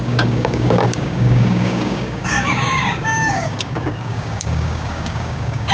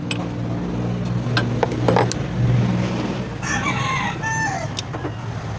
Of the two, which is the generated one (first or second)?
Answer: first